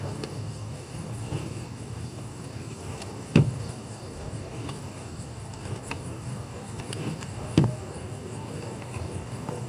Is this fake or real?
fake